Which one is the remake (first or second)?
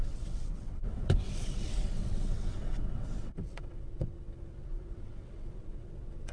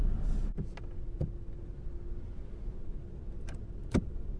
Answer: first